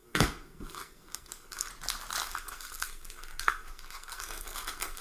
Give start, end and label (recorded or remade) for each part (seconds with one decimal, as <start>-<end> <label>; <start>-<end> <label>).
0.0-1.7 remade; 1.7-2.2 recorded; 2.2-5.0 remade